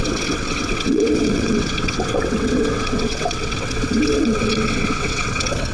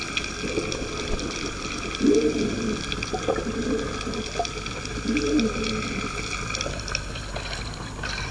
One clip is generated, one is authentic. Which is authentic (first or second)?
second